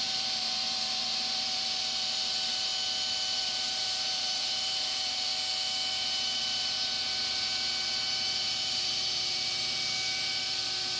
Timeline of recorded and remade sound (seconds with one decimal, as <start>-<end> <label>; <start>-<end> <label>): 0.0-2.7 remade; 2.7-3.4 recorded; 3.4-5.3 remade; 5.3-5.9 recorded; 5.9-11.0 remade